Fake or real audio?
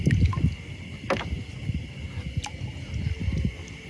real